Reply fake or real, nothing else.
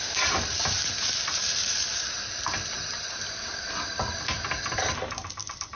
fake